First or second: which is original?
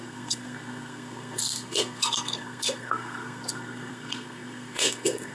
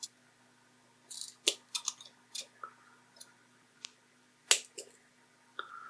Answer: second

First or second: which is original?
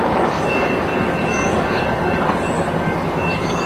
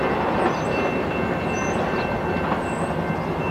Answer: second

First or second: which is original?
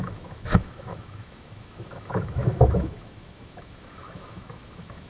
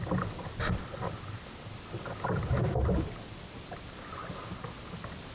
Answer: second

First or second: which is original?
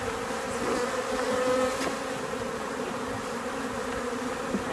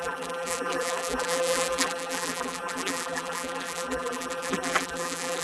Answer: first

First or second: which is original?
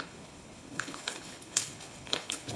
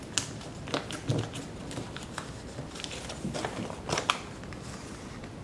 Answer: second